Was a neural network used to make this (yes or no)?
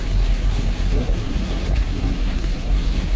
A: yes